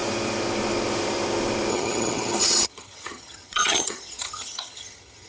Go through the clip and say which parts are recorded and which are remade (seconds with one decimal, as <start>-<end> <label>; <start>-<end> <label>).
0.0-1.7 recorded; 1.7-5.3 remade